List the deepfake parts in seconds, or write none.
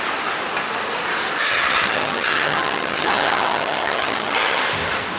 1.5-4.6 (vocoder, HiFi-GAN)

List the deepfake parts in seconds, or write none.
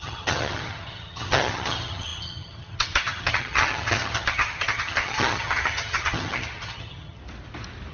0.0-7.2 (vocoder, HiFi-GAN)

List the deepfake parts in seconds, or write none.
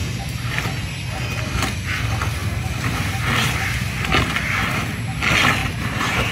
0.0-0.6 (vocoder, BigVGAN v2); 2.4-3.6; 5.6-6.3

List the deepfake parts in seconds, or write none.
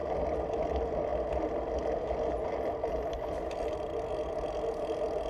none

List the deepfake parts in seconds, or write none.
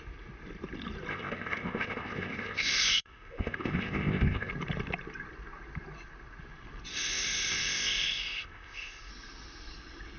1.1-4.5 (codec, ZipCodec); 6.9-9.1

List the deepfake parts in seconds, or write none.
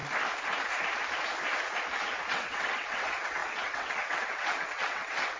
2.3-5.4 (vocoder, WaveNeXt)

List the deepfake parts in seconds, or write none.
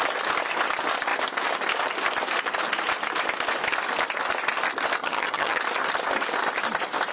5.0-5.6 (vocoder, HiFi-GAN)